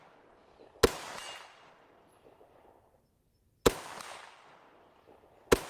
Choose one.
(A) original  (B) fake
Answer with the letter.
A